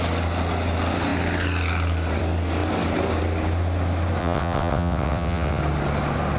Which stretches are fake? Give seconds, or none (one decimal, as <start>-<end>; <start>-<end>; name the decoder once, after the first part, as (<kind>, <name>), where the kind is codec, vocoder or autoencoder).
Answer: 4.2-5.6 (vocoder, WaveNeXt)